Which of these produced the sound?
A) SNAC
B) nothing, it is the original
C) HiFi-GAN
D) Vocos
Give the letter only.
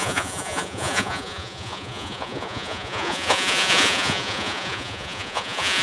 D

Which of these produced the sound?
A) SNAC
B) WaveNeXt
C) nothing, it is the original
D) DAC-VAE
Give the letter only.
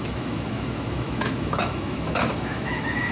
D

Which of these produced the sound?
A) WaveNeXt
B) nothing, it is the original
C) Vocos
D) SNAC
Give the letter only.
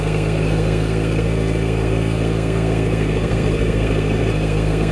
D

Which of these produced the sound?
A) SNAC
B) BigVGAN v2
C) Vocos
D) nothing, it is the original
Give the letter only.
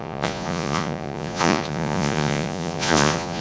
C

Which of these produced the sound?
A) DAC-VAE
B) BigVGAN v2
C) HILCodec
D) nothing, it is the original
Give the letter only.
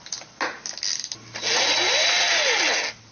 D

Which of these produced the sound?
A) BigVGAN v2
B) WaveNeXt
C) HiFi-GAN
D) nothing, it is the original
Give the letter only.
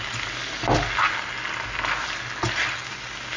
D